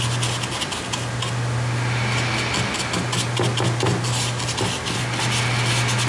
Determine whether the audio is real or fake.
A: real